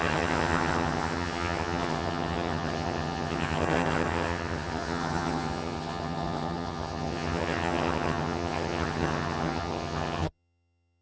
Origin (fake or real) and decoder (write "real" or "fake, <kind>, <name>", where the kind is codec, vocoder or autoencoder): fake, vocoder, HiFi-GAN